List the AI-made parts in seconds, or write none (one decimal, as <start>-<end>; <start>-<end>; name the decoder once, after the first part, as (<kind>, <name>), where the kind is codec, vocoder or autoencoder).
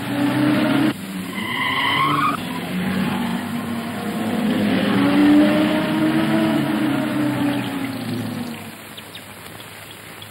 none